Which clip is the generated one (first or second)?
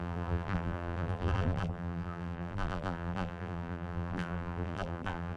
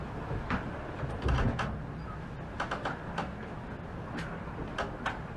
first